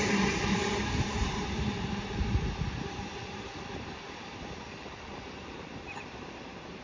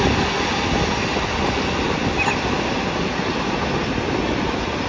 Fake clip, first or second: first